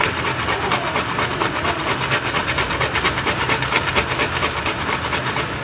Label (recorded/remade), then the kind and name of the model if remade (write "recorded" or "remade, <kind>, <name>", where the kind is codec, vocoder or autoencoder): recorded